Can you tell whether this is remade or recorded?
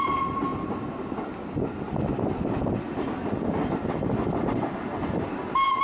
recorded